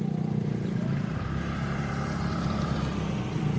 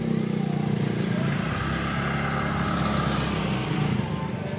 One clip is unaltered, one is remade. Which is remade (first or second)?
first